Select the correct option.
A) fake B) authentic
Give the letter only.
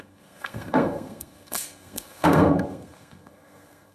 A